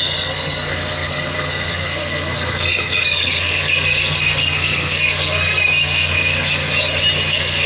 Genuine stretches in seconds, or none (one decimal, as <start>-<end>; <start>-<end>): 6.6-7.3